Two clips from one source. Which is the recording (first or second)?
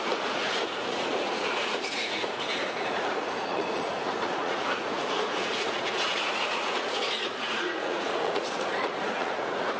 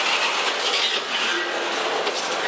second